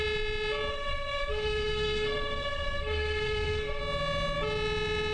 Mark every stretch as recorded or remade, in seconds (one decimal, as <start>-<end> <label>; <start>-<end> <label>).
0.0-0.7 recorded; 0.7-3.8 remade; 3.8-5.1 recorded